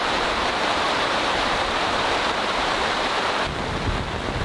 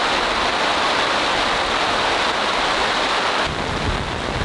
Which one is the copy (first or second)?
first